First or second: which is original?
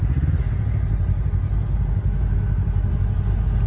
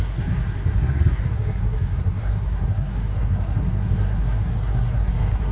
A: first